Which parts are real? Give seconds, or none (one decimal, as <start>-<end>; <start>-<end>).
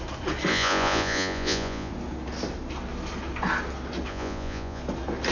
0.0-0.5; 1.9-4.1; 4.8-5.3